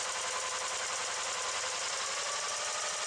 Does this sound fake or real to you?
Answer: real